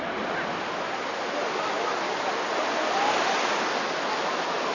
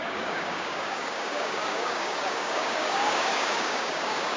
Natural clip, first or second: first